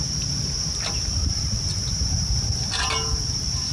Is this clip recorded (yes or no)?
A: no